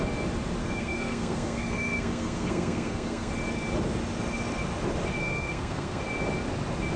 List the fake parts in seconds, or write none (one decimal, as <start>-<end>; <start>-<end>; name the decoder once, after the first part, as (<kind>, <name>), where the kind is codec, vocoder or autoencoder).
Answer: 0.6-3.3 (codec, SNAC); 5.2-6.0